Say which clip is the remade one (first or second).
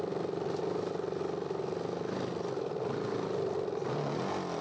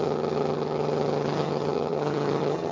second